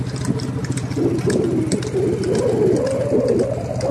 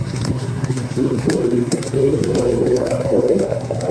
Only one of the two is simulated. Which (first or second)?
second